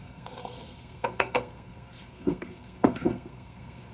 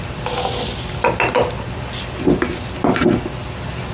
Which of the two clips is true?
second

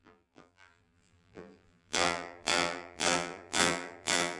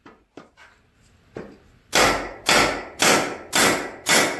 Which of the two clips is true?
second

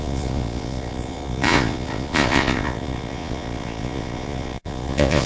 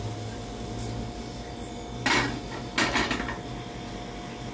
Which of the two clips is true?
second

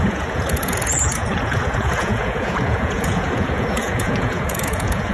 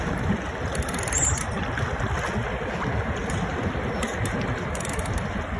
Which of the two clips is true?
second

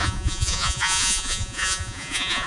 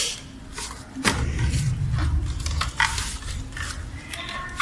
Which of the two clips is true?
second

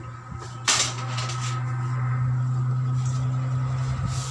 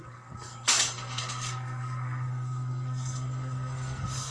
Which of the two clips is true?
first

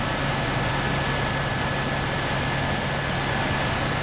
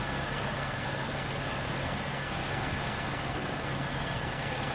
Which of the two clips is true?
first